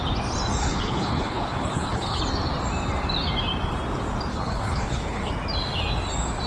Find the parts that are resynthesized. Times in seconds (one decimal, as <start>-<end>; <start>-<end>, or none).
0.6-2.2; 4.3-5.3